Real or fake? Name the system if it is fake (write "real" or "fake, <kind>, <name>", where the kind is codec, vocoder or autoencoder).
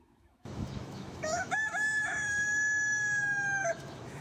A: fake, autoencoder, DAC-VAE